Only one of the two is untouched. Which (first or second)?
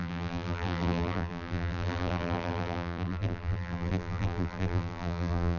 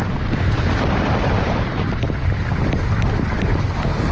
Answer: second